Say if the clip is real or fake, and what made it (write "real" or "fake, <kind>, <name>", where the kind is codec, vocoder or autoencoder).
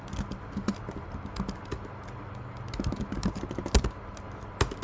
real